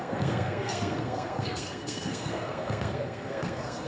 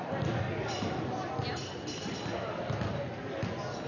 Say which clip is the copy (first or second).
first